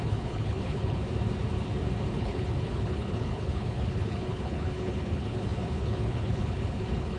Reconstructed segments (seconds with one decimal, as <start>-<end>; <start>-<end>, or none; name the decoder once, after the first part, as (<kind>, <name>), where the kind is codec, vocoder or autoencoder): 0.0-1.0 (codec, HILCodec); 2.1-7.2